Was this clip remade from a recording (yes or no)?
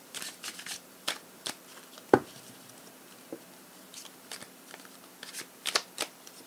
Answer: yes